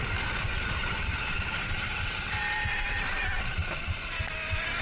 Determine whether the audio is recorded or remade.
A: recorded